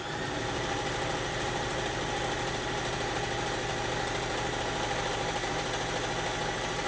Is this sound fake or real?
real